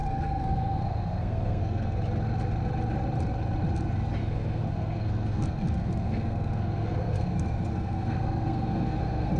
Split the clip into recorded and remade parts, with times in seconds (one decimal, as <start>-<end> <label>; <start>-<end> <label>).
0.0-2.0 remade; 2.0-4.2 recorded; 4.2-9.4 remade